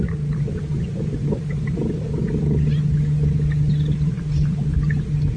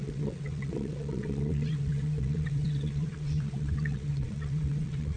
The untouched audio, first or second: first